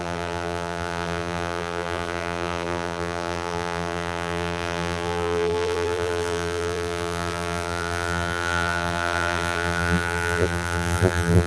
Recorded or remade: remade